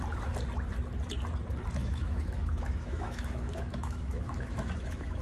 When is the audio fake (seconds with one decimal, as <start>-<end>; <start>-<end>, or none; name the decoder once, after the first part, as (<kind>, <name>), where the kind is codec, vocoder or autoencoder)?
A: 1.8-5.2 (autoencoder, DAC-VAE)